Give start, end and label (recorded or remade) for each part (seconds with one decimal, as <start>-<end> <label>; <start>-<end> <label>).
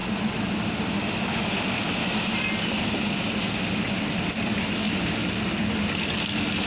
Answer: 0.0-6.7 recorded